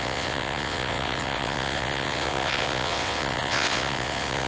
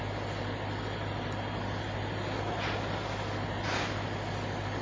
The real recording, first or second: second